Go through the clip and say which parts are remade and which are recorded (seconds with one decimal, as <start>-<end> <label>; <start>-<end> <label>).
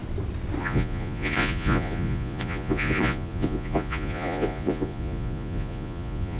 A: 0.0-0.6 recorded; 0.6-6.4 remade